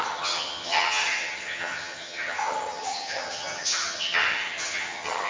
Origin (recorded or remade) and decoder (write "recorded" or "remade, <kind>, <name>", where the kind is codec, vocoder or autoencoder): remade, vocoder, HiFi-GAN